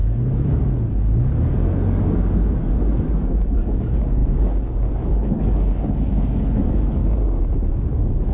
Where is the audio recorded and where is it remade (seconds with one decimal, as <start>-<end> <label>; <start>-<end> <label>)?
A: 0.0-7.0 remade; 7.0-7.7 recorded; 7.7-8.3 remade